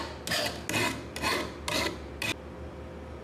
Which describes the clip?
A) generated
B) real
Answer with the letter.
B